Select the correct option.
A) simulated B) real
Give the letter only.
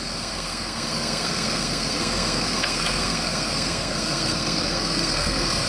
A